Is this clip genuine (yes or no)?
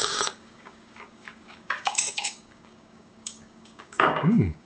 no